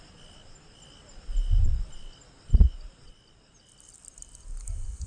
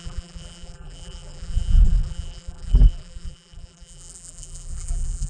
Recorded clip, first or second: first